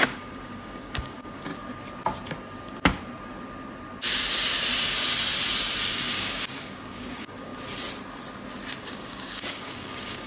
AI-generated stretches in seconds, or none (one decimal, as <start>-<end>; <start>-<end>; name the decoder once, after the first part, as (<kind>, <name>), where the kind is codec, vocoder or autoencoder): 0.0-1.5 (codec, DAC); 5.9-7.5; 8.8-10.3